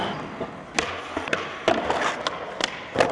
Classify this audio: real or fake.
real